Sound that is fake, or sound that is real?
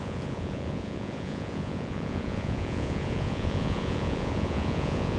fake